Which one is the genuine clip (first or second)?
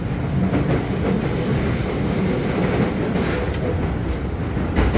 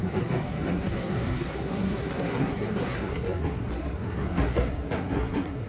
first